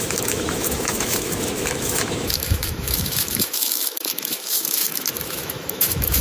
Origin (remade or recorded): remade